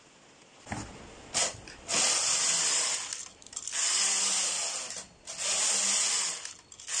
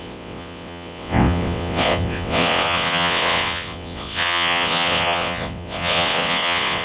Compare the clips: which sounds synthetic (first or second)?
second